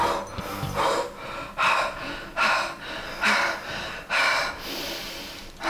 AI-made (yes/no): no